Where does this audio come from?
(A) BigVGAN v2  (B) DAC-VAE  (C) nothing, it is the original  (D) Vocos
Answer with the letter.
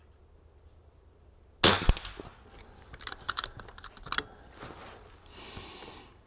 C